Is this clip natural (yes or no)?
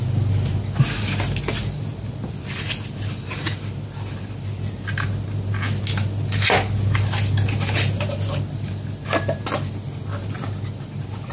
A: yes